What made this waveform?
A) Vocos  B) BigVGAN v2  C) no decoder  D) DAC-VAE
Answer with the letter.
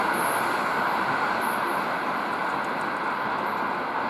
C